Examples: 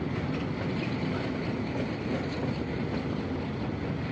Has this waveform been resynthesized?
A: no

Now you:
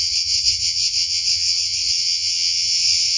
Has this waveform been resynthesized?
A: yes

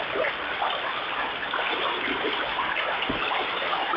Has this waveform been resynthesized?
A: no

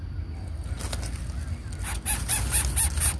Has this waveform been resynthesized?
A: no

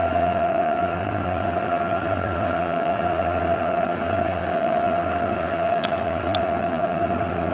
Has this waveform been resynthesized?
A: yes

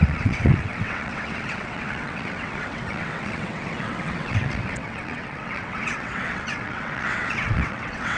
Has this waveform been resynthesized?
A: yes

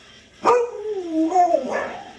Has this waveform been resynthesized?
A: yes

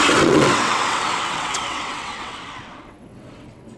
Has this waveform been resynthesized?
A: yes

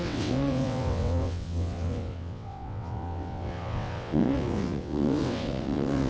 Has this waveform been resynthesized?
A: yes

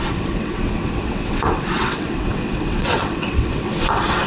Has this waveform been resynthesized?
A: yes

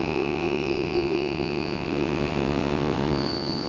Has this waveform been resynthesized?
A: yes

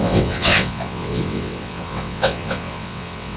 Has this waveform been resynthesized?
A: yes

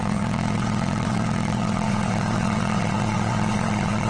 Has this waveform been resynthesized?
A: yes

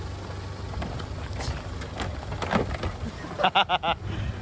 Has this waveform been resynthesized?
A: no